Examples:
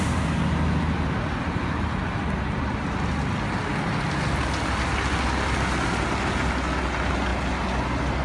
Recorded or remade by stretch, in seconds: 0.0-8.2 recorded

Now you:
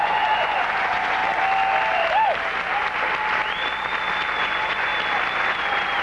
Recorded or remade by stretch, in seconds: 0.0-1.2 remade; 1.2-4.4 recorded; 4.4-4.9 remade; 4.9-5.5 recorded; 5.5-6.0 remade